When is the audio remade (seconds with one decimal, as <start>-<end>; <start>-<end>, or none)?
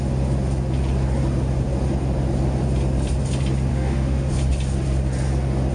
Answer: 3.7-4.3